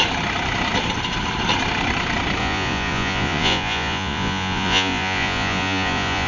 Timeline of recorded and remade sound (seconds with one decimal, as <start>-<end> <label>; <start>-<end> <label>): 0.0-2.4 recorded; 2.4-6.3 remade